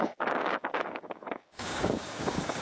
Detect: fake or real fake